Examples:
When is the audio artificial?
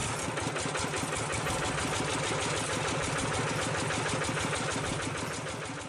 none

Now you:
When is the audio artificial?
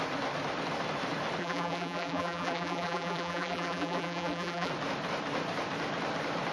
1.4-4.7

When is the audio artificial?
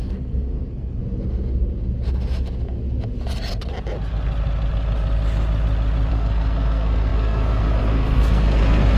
0.0-1.0; 6.1-9.0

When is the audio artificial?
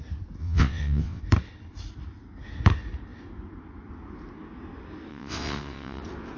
0.4-1.2; 5.1-6.0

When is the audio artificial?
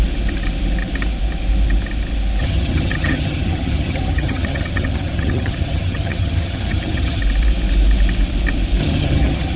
2.4-7.2; 8.8-9.6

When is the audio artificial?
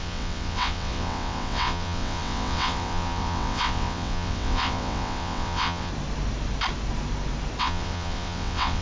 0.0-5.9; 7.6-8.8